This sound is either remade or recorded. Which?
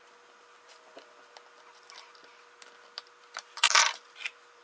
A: recorded